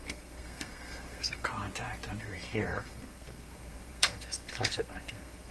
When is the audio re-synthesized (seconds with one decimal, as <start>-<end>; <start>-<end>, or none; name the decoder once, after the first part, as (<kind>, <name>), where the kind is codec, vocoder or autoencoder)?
0.0-1.5 (codec, SNAC); 2.2-5.5